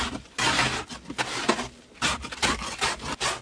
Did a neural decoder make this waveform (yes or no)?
no